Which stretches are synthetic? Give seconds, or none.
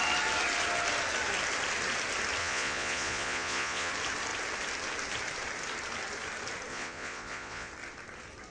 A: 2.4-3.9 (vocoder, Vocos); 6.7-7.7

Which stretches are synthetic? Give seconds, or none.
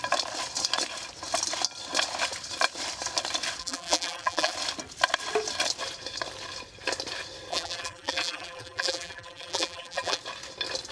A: 3.6-4.5 (vocoder, BigVGAN v2); 7.5-10.2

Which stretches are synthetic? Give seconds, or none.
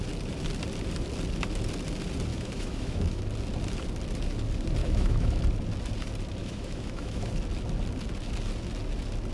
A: 2.3-3.2 (autoencoder, DAC-VAE); 4.8-5.4; 6.4-7.3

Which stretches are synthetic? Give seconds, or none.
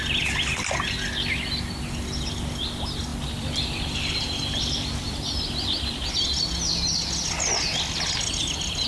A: 3.1-6.1 (vocoder, BigVGAN v2)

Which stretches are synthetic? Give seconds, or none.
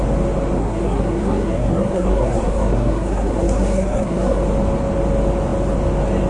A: 0.6-4.4 (codec, SNAC)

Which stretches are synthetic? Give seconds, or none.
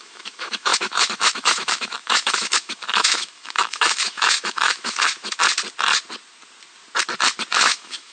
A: 0.0-5.4 (autoencoder, DAC-VAE); 7.6-8.1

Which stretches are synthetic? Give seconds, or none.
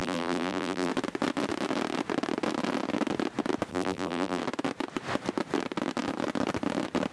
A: 0.0-0.9 (vocoder, BigVGAN v2); 3.7-4.4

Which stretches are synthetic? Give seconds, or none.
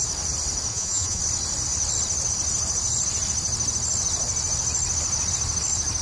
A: 0.7-1.2 (vocoder, Vocos)